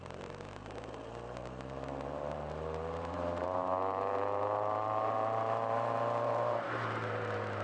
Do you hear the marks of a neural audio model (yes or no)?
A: yes